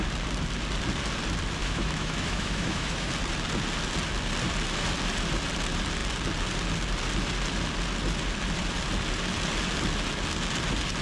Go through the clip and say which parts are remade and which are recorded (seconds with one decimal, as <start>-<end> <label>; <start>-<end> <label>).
0.0-1.6 recorded; 1.6-3.1 remade; 3.1-11.0 recorded